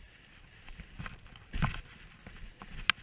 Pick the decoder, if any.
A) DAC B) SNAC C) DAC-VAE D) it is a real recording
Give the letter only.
D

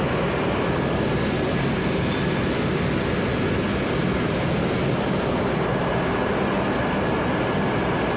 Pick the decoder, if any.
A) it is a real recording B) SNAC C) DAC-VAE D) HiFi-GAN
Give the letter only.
A